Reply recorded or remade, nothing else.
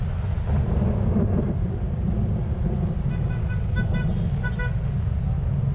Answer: recorded